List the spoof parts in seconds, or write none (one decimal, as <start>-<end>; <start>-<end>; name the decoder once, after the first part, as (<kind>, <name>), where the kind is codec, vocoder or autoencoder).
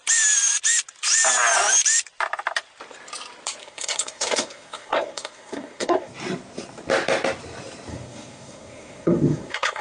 3.6-6.1 (codec, SNAC); 7.9-9.8